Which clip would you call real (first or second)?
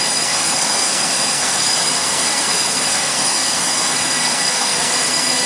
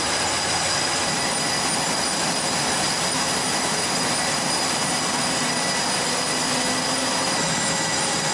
second